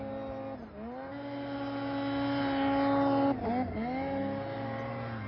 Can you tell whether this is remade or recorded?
recorded